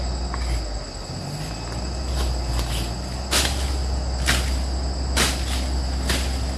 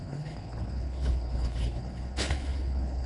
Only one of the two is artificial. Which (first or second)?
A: second